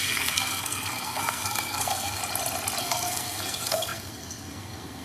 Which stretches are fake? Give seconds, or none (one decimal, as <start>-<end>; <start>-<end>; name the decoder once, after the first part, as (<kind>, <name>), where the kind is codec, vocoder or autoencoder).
0.0-2.2 (codec, SNAC); 2.8-5.0